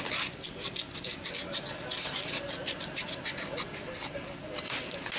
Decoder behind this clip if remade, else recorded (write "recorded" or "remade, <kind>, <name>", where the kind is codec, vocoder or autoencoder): recorded